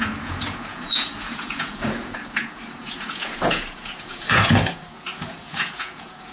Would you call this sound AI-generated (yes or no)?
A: yes